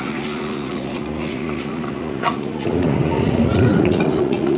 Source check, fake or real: fake